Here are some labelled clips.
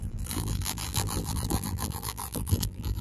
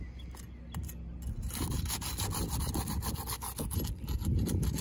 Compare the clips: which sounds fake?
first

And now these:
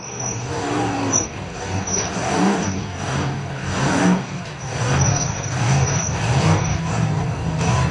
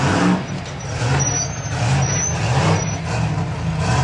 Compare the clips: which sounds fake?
first